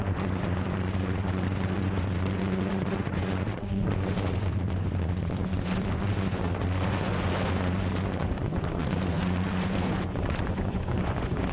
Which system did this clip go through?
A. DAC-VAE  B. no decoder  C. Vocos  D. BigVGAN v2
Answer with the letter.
C